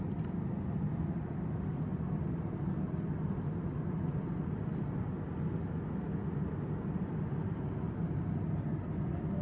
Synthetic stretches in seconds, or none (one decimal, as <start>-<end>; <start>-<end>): none